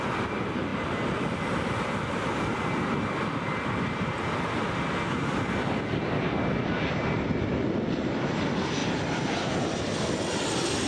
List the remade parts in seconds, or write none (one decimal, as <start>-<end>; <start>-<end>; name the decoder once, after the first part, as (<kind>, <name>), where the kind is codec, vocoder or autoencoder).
none